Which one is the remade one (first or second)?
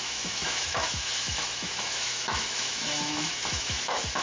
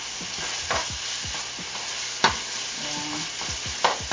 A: first